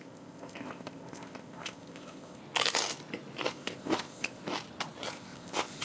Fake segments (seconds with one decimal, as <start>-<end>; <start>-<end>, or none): 0.0-2.4; 3.5-4.4; 5.1-5.8